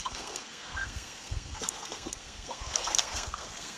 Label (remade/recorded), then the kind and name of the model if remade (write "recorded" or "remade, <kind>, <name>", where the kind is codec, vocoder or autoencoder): remade, codec, SNAC